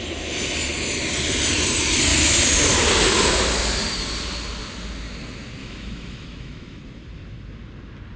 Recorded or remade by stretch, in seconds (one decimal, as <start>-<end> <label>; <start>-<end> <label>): 0.0-5.6 recorded; 5.6-6.8 remade; 6.8-8.2 recorded